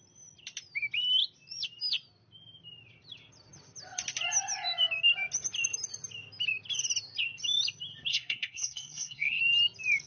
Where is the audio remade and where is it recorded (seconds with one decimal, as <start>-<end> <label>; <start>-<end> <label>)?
0.0-8.1 recorded; 8.1-9.4 remade; 9.4-10.1 recorded